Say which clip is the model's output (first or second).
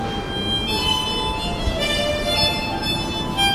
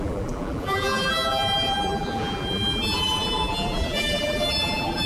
second